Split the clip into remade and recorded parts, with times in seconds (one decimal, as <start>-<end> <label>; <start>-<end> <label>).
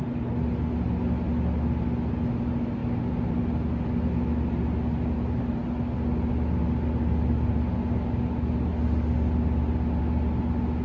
0.0-10.8 recorded